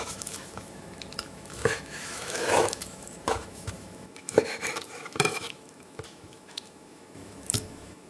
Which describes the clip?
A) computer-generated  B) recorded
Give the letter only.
A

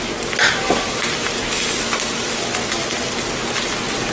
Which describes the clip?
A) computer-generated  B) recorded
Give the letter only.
B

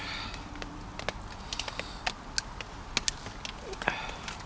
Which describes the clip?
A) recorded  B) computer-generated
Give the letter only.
A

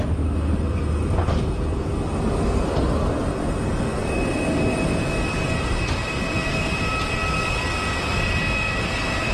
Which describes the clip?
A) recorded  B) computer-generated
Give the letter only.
A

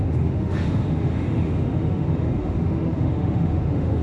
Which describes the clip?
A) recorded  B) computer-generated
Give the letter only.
B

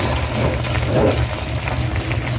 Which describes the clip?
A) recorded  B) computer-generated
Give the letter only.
A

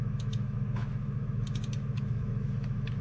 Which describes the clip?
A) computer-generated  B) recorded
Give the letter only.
A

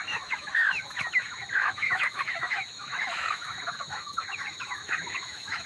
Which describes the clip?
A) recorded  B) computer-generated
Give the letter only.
B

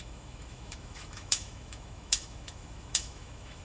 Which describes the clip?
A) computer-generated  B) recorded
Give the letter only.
A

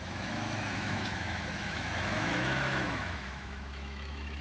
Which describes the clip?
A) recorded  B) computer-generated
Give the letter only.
B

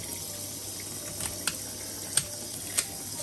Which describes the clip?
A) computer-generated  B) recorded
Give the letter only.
B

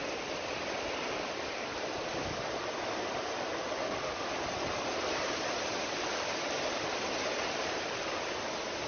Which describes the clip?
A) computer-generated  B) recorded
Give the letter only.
B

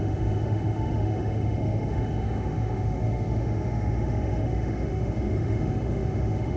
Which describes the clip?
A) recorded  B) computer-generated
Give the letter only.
B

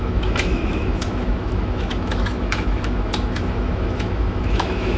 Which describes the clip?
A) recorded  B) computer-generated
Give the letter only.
B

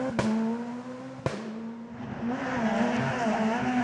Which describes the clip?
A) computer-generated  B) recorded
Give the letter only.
B